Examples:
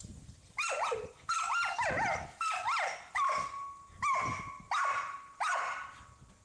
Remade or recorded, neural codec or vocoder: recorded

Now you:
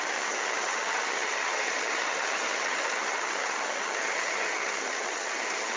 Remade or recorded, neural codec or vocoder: remade, vocoder, HiFi-GAN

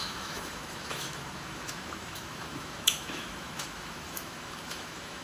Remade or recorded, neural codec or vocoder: remade, autoencoder, DAC-VAE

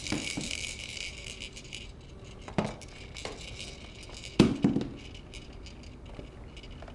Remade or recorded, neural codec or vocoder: recorded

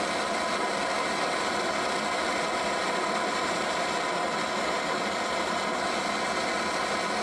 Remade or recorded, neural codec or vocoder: remade, vocoder, BigVGAN v2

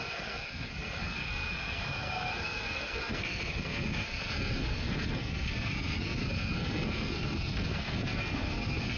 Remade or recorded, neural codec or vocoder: remade, codec, SNAC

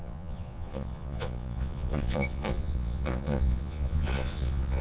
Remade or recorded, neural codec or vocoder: remade, vocoder, Vocos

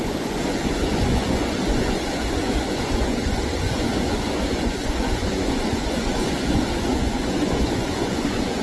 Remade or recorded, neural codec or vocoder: remade, vocoder, Vocos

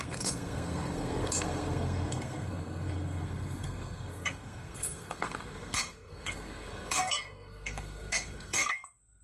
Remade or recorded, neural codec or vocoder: remade, codec, SNAC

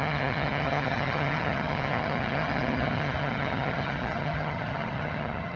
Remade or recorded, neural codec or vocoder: remade, vocoder, HiFi-GAN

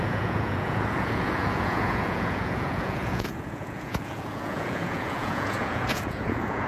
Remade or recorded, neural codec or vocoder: remade, vocoder, Vocos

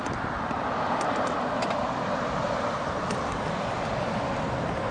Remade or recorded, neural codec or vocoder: recorded